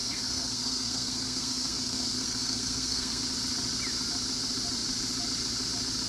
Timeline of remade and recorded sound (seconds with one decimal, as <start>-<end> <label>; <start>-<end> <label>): 0.0-3.2 remade; 3.2-6.1 recorded

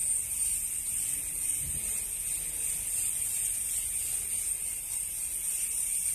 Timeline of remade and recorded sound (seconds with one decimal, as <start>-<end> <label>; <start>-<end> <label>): 0.0-6.1 recorded